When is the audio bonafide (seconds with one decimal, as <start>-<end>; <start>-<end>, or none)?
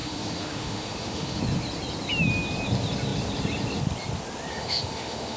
1.4-4.5